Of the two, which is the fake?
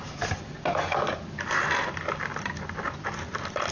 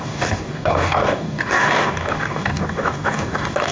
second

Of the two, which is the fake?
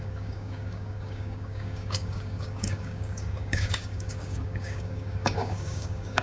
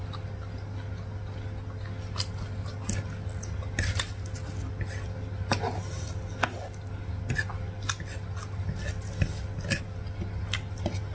first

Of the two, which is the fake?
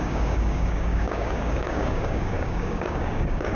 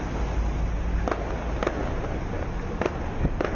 first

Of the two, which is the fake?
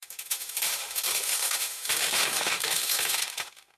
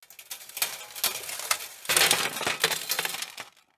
first